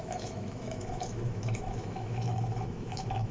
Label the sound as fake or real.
fake